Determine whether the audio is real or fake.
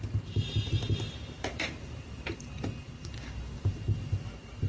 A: fake